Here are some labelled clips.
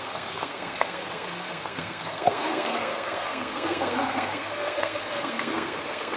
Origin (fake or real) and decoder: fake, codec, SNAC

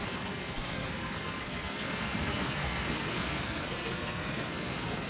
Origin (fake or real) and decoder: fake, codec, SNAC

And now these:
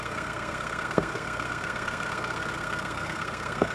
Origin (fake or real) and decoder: fake, codec, SNAC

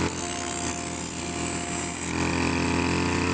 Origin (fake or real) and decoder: real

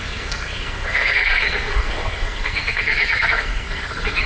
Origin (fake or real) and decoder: fake, codec, SNAC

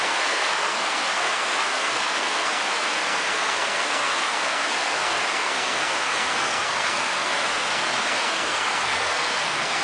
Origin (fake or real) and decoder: fake, codec, SNAC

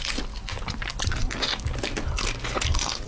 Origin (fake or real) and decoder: real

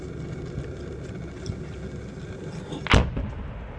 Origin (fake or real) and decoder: real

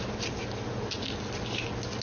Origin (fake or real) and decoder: real